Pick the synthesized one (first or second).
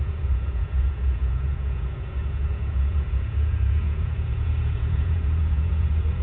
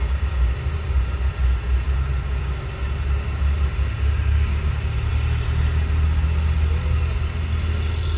first